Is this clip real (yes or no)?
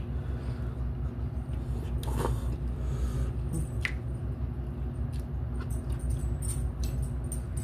yes